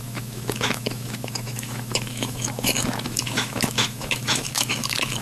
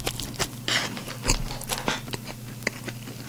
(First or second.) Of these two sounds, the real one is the second